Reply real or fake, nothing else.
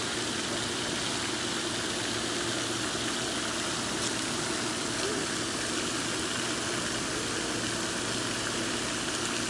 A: real